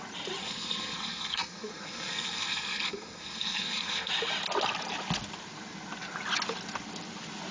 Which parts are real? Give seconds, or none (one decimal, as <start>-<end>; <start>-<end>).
0.0-0.4; 4.1-7.5